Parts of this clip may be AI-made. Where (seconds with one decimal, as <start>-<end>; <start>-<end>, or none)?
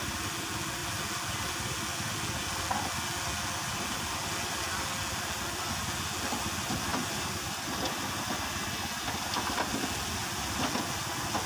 none